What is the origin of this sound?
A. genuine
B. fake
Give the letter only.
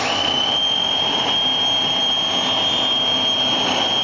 A